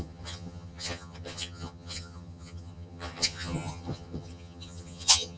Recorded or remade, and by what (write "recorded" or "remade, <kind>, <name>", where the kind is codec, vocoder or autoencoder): remade, vocoder, HiFi-GAN